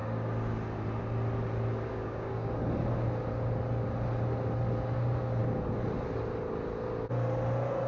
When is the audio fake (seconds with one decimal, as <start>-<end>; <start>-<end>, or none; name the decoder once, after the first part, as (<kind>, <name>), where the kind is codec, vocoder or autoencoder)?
1.9-2.5 (codec, DAC)